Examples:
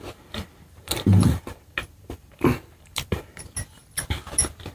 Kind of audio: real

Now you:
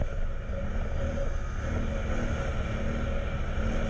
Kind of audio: real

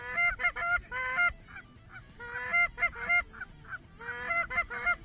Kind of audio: real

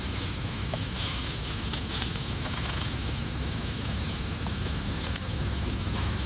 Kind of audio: fake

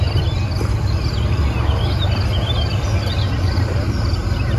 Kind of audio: real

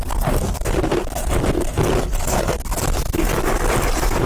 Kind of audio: fake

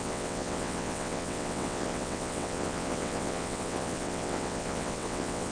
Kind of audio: fake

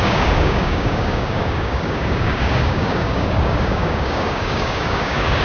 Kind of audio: fake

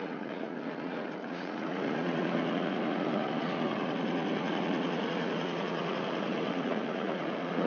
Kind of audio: fake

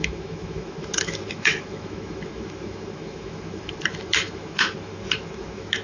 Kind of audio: fake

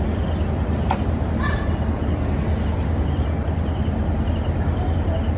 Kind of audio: real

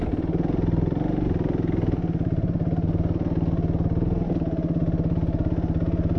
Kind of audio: real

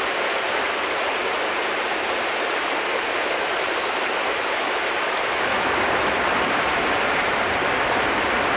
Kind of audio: real